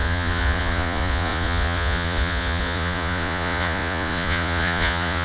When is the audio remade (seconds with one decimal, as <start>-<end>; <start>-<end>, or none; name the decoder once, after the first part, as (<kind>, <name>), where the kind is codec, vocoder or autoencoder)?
0.0-5.2 (vocoder, Vocos)